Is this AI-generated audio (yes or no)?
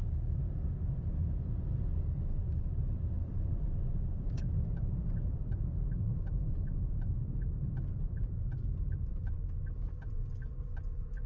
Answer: yes